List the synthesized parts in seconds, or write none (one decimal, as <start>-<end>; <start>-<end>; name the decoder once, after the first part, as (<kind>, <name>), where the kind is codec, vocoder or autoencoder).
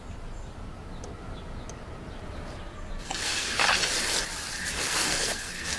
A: 3.0-3.6 (codec, SNAC); 4.8-5.8